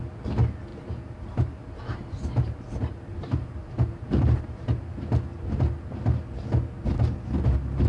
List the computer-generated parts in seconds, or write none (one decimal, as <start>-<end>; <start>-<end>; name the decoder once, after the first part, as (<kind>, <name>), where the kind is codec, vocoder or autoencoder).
0.7-4.8 (vocoder, BigVGAN v2); 5.3-5.9